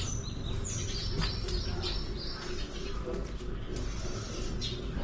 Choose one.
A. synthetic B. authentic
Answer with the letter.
B